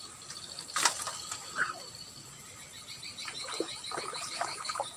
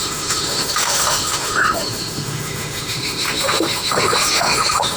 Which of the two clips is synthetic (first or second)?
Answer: second